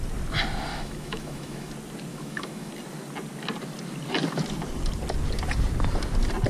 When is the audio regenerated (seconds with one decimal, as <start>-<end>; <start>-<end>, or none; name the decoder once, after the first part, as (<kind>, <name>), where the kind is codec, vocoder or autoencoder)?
0.7-1.7 (autoencoder, DAC-VAE); 2.1-2.7